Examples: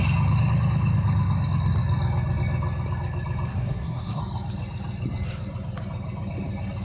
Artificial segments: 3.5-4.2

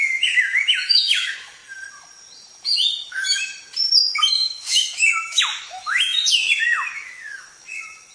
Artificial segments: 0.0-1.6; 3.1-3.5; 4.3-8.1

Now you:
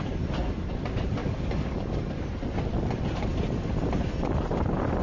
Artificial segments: 1.2-2.0